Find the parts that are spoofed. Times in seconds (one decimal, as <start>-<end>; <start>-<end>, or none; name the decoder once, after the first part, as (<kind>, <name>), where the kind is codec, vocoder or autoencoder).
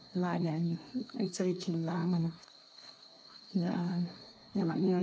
0.0-5.0 (codec, SNAC)